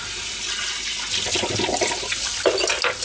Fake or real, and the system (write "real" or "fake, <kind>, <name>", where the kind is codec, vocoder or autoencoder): real